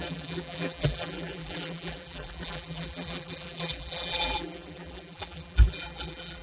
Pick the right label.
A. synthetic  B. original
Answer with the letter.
A